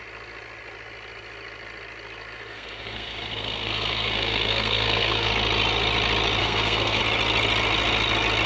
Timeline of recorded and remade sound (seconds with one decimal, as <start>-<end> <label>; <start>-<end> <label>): 0.0-2.5 recorded; 2.5-5.3 remade; 5.3-6.4 recorded; 6.4-7.0 remade; 7.0-8.5 recorded